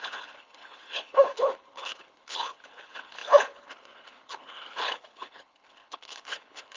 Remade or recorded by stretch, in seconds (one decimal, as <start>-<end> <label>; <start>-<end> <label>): 0.0-6.8 remade